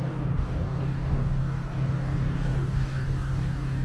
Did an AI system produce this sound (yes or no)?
yes